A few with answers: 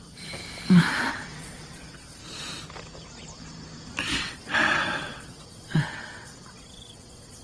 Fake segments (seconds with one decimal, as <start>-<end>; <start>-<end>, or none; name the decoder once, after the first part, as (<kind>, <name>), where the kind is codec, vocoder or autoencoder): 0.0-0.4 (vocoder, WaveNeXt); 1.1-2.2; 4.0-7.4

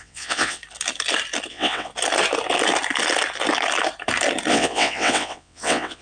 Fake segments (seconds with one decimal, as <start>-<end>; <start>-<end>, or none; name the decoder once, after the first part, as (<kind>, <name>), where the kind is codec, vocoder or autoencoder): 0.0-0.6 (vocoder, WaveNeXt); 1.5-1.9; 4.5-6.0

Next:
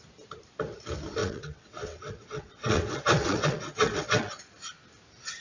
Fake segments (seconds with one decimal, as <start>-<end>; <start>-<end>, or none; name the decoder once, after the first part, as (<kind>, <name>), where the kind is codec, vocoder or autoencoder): 1.2-4.4 (vocoder, WaveNeXt)

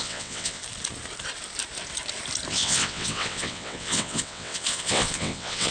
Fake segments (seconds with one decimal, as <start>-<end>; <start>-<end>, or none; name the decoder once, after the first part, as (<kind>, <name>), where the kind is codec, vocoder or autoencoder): 0.0-0.6 (vocoder, WaveNeXt); 2.5-5.7